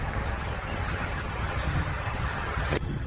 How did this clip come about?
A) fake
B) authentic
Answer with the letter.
A